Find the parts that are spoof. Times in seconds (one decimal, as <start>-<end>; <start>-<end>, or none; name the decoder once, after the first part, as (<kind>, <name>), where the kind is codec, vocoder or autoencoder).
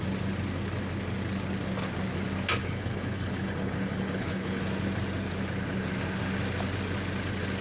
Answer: 2.6-4.6 (codec, HILCodec)